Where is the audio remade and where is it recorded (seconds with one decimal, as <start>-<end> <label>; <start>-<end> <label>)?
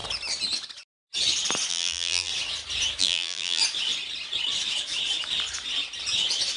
0.0-1.7 recorded; 1.7-2.3 remade; 2.3-3.0 recorded; 3.0-3.6 remade; 3.6-6.6 recorded